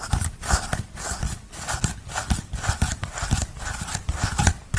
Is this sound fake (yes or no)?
no